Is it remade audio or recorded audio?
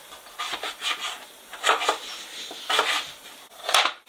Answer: recorded